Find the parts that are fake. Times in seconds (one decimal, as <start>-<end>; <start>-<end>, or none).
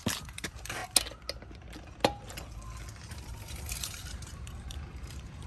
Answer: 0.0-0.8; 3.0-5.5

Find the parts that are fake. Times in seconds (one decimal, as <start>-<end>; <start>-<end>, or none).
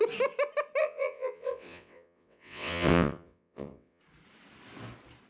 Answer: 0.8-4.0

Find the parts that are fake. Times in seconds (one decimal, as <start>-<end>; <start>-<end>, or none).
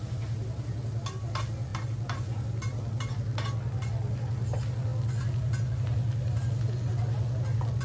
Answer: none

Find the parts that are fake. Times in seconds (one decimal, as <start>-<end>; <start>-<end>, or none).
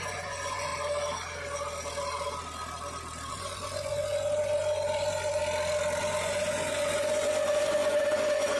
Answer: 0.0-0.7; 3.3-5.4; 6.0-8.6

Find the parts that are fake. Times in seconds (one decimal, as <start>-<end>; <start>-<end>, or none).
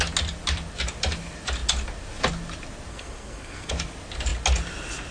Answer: 2.9-3.7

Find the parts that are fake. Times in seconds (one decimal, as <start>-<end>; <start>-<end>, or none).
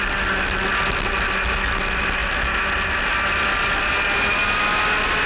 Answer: none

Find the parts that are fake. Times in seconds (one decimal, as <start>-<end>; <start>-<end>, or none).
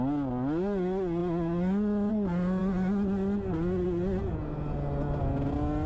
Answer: none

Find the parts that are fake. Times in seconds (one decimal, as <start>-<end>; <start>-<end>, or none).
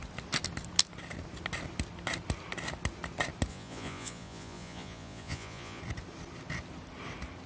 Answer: 3.5-5.8